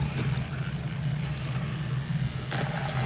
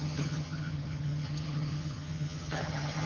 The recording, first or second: first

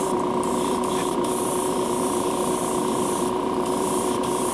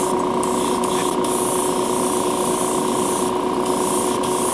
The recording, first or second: second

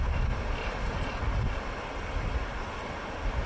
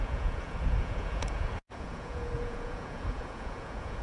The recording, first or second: first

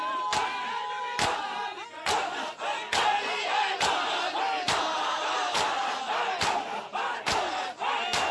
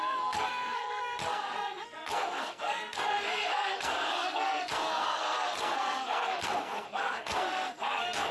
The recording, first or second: first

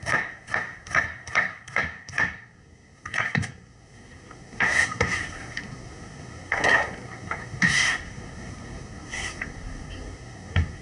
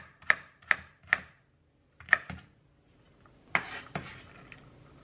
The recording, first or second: second